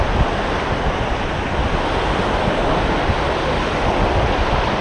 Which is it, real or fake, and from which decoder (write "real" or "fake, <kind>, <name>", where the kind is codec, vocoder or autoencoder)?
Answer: real